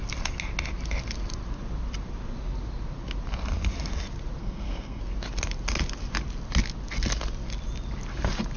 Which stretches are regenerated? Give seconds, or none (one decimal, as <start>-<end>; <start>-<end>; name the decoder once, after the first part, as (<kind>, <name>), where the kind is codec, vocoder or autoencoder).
4.4-5.0 (codec, SNAC)